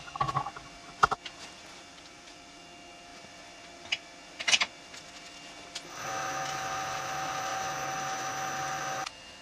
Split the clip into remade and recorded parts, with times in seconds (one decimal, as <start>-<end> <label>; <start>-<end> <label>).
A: 0.0-9.4 recorded